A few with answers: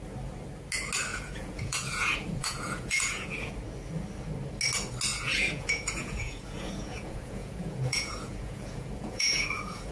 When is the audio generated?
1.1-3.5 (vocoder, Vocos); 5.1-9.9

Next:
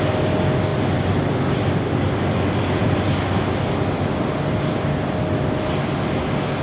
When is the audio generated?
none

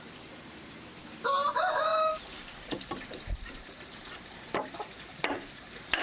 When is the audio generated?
0.0-6.0 (vocoder, BigVGAN v2)

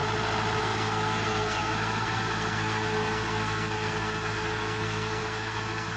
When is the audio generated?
0.6-6.0 (codec, SNAC)

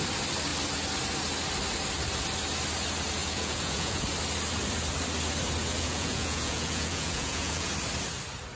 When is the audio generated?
3.2-4.0 (vocoder, Vocos); 5.7-7.7

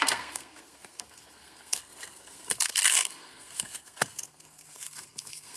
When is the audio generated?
0.0-5.6 (codec, SNAC)